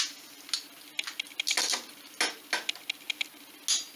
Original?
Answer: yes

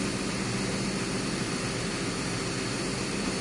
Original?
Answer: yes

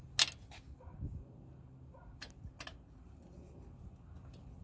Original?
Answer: yes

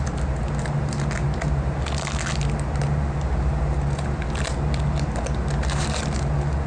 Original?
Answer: yes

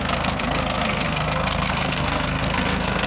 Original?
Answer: no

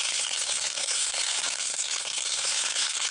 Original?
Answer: no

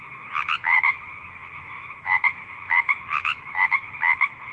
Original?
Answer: no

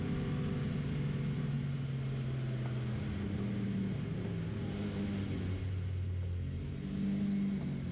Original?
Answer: yes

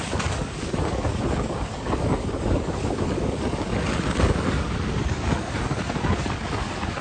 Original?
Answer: no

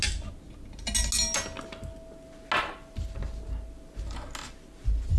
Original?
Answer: yes